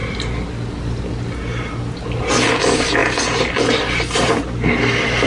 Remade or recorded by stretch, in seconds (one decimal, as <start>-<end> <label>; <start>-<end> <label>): 0.0-2.6 recorded; 2.6-5.3 remade